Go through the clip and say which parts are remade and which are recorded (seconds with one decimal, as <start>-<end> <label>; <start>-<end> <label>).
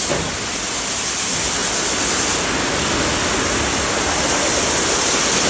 0.0-5.5 recorded